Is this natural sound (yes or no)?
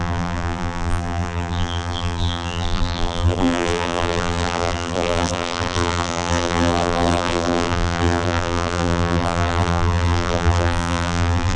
no